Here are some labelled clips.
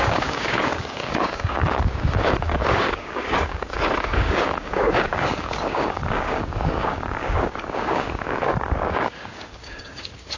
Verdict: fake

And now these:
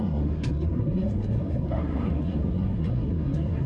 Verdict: fake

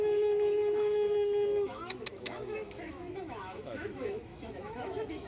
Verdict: fake